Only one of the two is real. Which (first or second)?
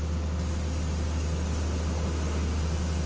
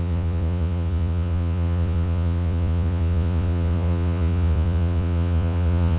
first